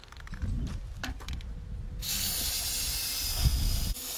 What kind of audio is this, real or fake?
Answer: real